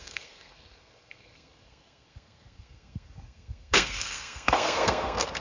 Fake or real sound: fake